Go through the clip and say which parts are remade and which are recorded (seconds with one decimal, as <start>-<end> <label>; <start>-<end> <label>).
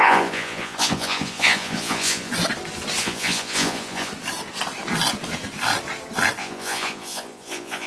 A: 0.0-2.3 remade; 2.3-3.0 recorded; 3.0-4.1 remade; 4.1-6.4 recorded; 6.4-7.9 remade